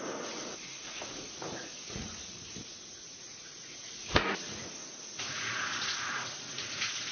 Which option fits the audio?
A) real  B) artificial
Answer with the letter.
B